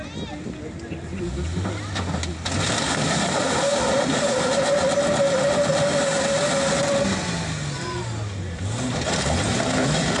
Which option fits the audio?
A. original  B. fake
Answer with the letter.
A